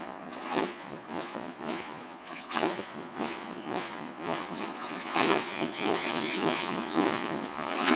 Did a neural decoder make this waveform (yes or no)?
yes